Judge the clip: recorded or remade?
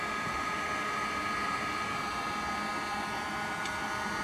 recorded